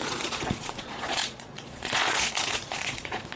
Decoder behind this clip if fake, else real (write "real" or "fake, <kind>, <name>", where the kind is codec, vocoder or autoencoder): fake, vocoder, Vocos